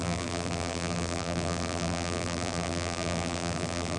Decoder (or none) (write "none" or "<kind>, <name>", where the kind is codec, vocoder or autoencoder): vocoder, BigVGAN v2